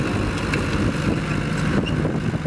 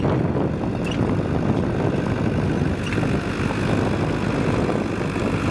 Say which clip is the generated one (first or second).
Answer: first